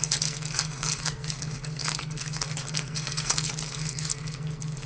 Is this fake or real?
fake